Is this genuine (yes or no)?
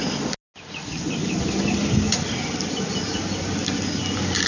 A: yes